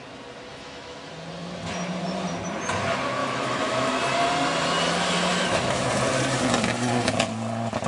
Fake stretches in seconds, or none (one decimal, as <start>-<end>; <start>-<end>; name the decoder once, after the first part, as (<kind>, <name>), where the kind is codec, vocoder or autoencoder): 0.5-1.1 (autoencoder, DAC-VAE); 3.2-3.9; 5.3-5.8